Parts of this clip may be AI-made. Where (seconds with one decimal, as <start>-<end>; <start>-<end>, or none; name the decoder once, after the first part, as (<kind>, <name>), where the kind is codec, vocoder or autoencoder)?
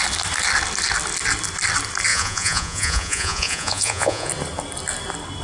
2.1-4.3 (vocoder, Vocos)